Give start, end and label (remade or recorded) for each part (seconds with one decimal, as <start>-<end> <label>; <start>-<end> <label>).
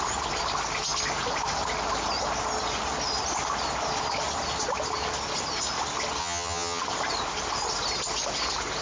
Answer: 0.0-6.2 recorded; 6.2-6.8 remade; 6.8-8.8 recorded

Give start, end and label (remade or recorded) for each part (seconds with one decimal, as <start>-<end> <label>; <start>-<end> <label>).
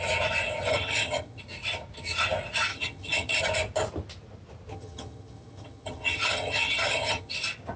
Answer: 0.0-0.7 recorded; 0.7-1.4 remade; 1.4-2.7 recorded; 2.7-3.4 remade; 3.4-4.7 recorded; 4.7-7.3 remade; 7.3-7.8 recorded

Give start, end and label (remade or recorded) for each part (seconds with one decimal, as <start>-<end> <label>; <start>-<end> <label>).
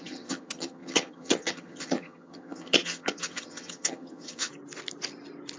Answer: 0.0-4.5 remade; 4.5-5.6 recorded